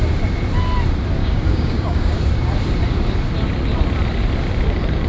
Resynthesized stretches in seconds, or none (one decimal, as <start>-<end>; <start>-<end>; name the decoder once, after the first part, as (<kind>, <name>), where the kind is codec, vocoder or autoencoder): 1.2-2.2 (codec, DAC)